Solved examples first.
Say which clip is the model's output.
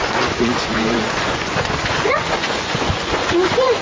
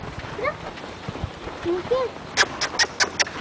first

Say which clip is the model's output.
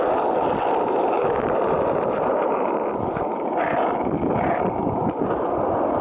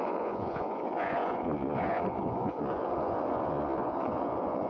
second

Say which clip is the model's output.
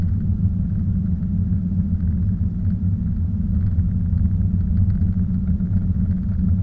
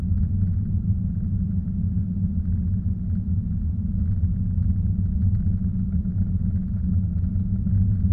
second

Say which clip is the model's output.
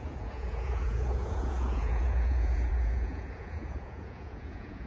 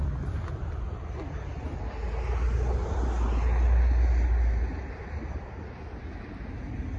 first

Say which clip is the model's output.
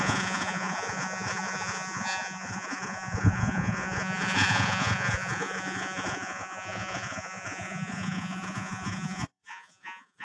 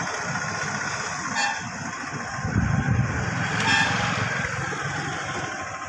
first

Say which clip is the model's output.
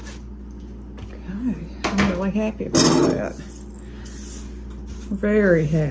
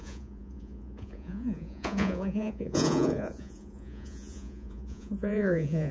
second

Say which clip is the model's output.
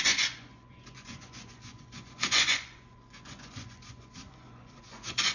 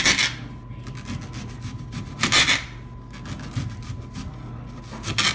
first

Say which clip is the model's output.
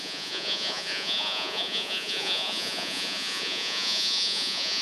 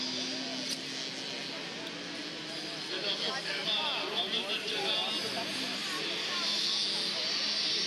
first